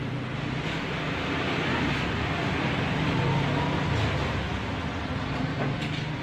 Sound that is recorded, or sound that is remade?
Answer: recorded